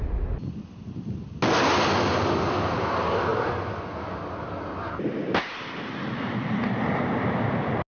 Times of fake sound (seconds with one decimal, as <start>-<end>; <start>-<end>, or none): none